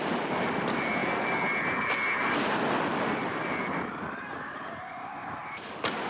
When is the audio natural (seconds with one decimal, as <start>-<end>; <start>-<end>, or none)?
0.0-6.1